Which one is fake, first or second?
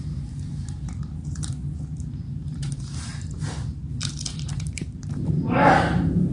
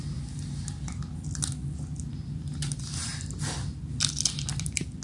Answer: first